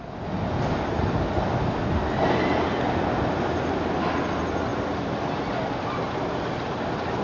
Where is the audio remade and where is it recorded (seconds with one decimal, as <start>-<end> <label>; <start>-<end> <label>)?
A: 0.0-7.2 recorded